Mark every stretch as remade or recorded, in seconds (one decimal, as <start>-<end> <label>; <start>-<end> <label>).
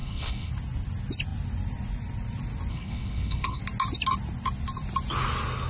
0.0-0.5 remade; 0.5-2.7 recorded; 2.7-3.6 remade; 3.6-5.7 recorded